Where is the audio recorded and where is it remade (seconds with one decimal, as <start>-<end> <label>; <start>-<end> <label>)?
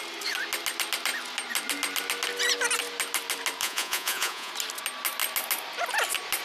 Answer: 0.0-3.6 recorded; 3.6-4.5 remade; 4.5-6.4 recorded